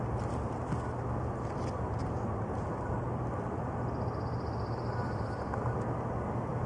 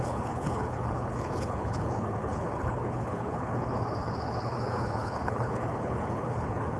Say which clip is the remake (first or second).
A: second